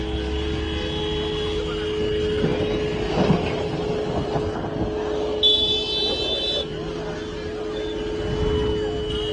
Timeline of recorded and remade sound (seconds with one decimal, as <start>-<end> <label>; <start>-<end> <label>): 0.0-9.3 recorded